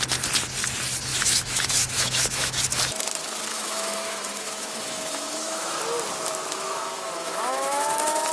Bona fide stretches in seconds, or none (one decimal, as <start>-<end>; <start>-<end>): 0.0-1.1; 2.6-3.5; 5.8-6.5

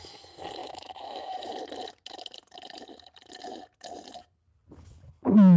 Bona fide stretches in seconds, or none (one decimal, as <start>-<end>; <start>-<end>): 0.0-0.6; 1.5-5.6